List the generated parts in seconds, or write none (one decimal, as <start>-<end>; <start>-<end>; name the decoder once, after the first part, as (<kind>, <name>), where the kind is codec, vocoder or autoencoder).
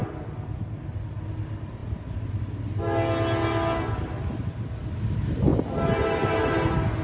none